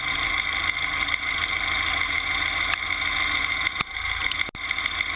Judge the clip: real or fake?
real